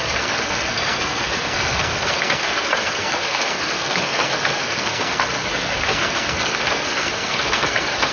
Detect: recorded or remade remade